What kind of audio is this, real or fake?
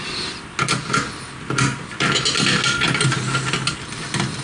real